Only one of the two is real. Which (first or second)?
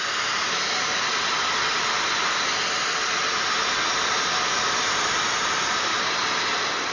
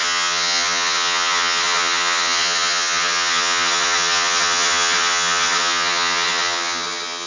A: first